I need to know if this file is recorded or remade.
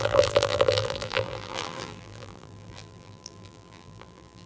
remade